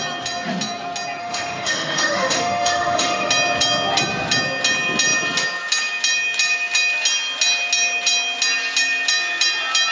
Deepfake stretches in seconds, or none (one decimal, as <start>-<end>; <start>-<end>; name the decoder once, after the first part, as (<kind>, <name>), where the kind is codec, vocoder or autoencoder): 1.2-3.3 (autoencoder, DAC-VAE)